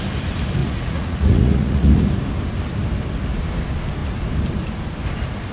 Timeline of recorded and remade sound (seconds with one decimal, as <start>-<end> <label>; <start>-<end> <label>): 0.0-0.6 recorded; 0.6-2.1 remade; 2.1-5.5 recorded